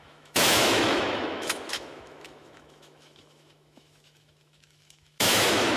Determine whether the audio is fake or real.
fake